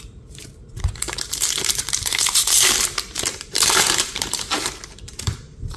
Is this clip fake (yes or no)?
yes